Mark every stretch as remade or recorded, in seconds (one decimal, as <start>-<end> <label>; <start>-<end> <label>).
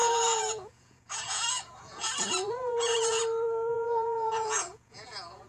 0.0-3.2 remade; 3.2-3.7 recorded; 3.7-5.5 remade